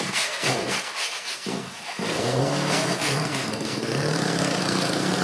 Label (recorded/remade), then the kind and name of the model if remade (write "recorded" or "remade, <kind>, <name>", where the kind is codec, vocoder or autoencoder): remade, codec, SNAC